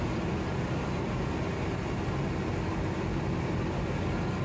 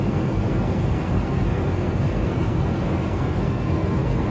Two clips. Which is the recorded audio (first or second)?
first